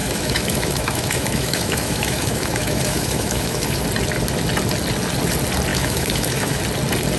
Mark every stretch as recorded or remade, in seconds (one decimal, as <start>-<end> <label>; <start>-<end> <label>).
0.0-3.8 remade; 3.8-5.7 recorded; 5.7-6.6 remade; 6.6-7.2 recorded